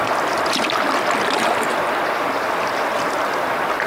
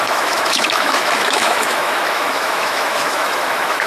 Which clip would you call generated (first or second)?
second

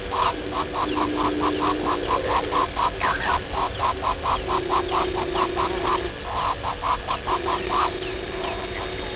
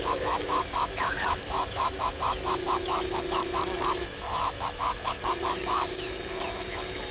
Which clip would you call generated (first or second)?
second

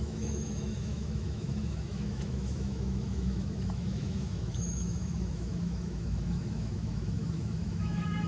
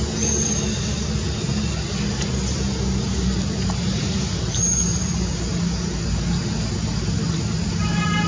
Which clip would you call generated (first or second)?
first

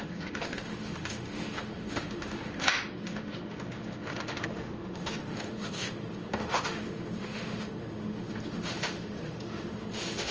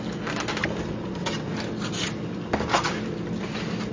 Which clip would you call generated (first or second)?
first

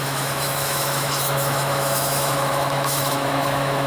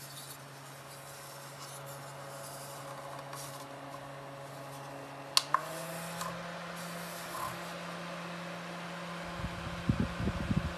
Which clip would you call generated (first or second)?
first